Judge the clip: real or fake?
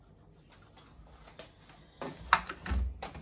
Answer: real